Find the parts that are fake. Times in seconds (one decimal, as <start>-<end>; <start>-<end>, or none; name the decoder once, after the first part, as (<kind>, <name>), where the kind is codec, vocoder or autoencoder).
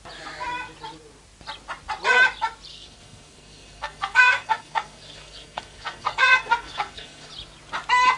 2.7-7.3 (codec, SNAC)